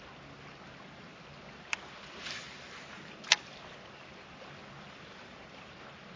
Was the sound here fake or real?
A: real